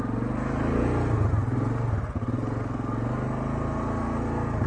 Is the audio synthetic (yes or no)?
no